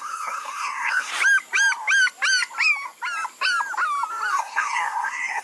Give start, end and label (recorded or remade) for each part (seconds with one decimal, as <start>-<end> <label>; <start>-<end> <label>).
0.0-1.1 remade; 1.1-4.3 recorded; 4.3-5.4 remade